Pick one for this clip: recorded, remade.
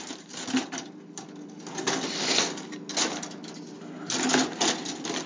recorded